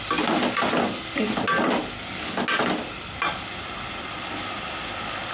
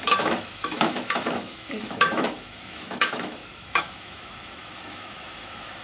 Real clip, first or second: first